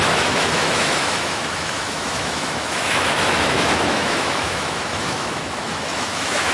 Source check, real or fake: fake